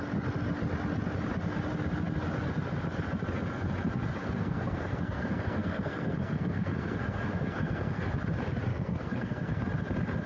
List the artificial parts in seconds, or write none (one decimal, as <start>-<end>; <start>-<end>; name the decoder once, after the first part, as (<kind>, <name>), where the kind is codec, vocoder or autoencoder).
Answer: 4.2-8.0 (codec, SNAC); 8.7-9.6

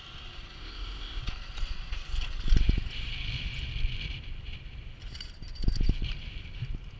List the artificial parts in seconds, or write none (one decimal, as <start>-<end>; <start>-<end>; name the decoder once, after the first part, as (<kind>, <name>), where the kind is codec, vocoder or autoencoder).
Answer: 0.6-1.2 (codec, ZipCodec)